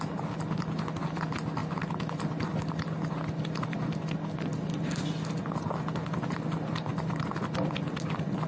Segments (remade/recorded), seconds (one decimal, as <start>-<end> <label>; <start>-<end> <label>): 0.0-8.5 recorded